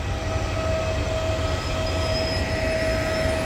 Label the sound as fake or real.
real